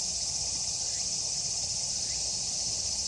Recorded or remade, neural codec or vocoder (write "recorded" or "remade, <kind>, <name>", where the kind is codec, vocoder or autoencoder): recorded